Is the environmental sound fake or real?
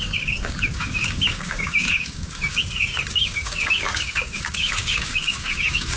fake